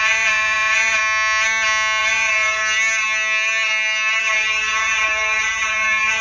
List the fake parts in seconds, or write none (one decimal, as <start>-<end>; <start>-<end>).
0.0-1.0; 2.0-2.6; 4.2-6.2